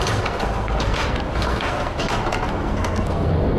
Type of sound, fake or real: fake